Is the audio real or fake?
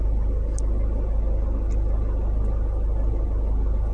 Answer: real